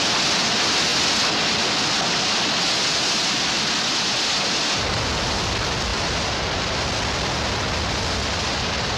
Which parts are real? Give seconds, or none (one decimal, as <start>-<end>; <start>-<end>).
0.0-5.9; 6.8-9.0